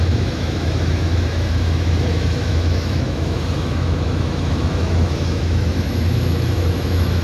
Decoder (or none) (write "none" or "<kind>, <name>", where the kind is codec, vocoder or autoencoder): autoencoder, DAC-VAE